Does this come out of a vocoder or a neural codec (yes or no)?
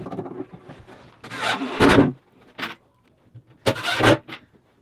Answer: no